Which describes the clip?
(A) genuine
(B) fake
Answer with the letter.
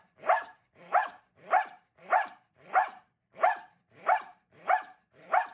B